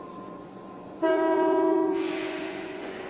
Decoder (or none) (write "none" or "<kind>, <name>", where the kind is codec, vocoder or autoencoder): vocoder, Vocos